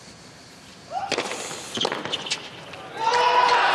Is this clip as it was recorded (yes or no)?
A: yes